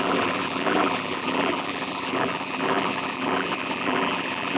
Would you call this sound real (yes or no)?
no